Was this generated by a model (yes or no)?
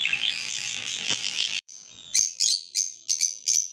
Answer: yes